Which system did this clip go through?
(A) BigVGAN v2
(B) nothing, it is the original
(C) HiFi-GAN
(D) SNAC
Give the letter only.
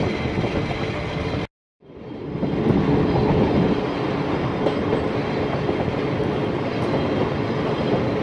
B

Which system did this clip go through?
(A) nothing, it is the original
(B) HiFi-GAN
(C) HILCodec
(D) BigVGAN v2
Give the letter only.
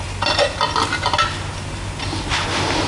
A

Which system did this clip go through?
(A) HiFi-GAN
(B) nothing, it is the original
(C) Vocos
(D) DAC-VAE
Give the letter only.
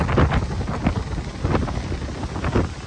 B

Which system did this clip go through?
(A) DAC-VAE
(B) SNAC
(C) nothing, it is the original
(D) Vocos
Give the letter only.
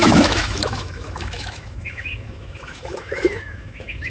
A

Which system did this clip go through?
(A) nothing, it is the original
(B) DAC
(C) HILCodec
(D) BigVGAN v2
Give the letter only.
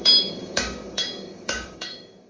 B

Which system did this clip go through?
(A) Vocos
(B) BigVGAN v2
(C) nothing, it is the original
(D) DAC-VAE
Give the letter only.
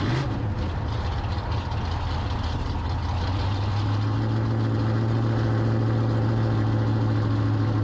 C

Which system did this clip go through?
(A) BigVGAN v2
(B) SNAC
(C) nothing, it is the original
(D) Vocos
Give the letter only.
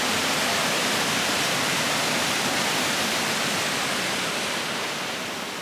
A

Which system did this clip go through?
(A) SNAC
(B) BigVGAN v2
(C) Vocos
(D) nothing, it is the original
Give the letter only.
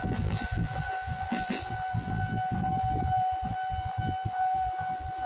B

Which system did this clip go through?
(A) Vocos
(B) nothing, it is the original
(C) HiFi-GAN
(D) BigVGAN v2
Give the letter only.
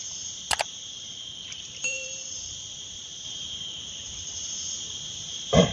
D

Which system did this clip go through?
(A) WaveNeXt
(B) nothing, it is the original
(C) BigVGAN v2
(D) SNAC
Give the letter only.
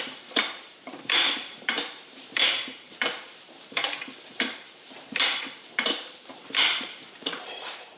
C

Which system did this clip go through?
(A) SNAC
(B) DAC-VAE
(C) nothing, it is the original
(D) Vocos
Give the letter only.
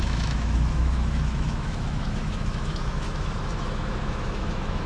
B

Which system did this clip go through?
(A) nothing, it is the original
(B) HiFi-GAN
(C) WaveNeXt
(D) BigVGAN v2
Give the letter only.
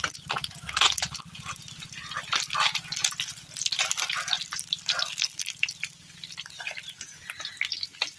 A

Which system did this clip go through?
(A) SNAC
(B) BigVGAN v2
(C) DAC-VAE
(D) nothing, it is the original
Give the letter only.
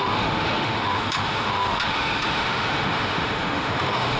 C